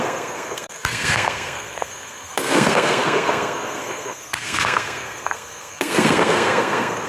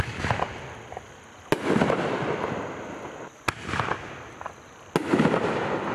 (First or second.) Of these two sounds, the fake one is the first